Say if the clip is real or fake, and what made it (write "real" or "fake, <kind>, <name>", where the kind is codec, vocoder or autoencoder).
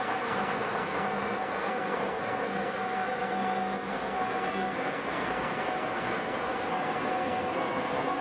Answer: fake, codec, SNAC